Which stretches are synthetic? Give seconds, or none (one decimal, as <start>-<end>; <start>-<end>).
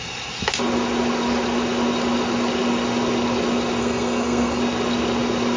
3.8-4.6